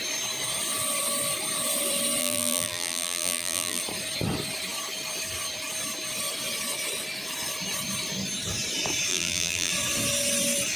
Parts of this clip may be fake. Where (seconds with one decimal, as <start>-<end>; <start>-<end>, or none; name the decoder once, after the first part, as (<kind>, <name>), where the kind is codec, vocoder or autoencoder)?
2.2-3.8 (vocoder, BigVGAN v2); 9.1-9.7

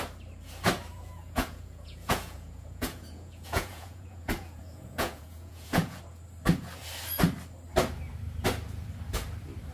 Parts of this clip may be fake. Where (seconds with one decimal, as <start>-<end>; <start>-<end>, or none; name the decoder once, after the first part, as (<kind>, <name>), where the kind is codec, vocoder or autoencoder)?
0.9-6.0 (vocoder, Vocos)